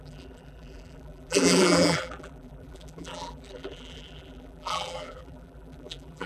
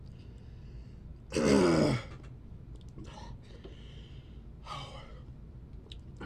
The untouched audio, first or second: second